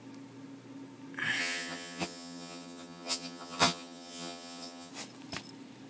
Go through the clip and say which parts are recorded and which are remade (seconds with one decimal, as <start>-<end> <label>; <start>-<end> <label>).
0.0-1.4 recorded; 1.4-4.9 remade; 4.9-5.9 recorded